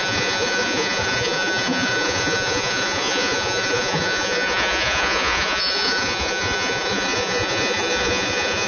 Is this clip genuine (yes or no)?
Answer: no